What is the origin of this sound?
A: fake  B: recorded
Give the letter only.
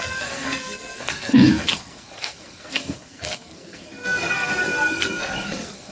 A